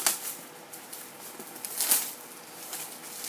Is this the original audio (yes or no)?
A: yes